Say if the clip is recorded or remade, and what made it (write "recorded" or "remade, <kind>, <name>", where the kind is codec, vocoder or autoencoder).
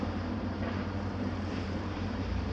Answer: remade, vocoder, BigVGAN v2